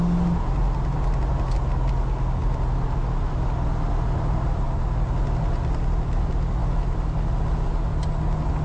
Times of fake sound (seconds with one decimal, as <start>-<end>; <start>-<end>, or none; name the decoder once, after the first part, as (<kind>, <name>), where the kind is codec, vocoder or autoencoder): none